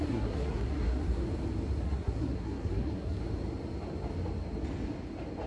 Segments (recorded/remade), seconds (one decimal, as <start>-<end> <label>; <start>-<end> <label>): 0.0-1.2 remade; 1.2-1.8 recorded; 1.8-3.2 remade; 3.2-5.5 recorded